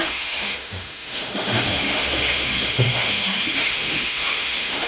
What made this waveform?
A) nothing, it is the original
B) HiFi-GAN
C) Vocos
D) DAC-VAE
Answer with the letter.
D